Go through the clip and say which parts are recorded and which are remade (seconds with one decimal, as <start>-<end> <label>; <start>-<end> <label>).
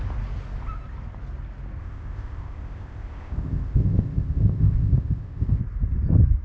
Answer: 0.0-1.8 recorded; 1.8-5.6 remade; 5.6-6.4 recorded